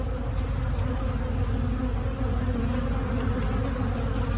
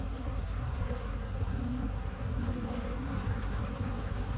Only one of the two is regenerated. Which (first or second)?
second